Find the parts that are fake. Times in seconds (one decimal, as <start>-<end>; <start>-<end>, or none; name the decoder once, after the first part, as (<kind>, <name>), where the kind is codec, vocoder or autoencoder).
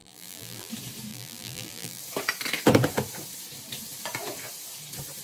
0.0-0.7 (vocoder, BigVGAN v2); 1.1-2.0